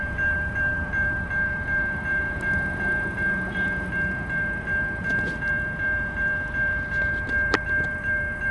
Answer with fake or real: fake